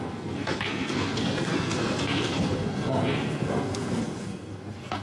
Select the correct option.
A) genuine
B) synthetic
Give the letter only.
B